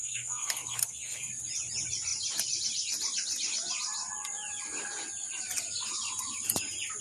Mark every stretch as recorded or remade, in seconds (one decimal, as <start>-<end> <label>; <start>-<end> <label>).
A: 0.0-1.3 remade; 1.3-7.0 recorded